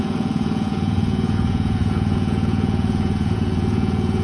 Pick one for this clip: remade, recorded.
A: remade